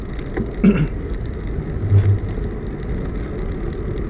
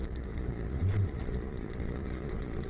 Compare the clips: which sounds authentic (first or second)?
first